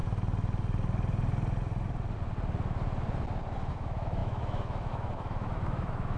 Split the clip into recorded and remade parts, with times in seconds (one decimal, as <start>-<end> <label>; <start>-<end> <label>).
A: 0.0-3.7 recorded; 3.7-6.2 remade